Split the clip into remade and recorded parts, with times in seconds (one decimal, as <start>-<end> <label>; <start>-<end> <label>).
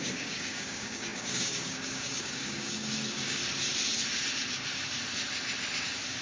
0.0-3.4 remade; 3.4-6.2 recorded